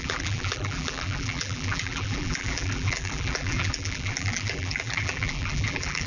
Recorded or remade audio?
remade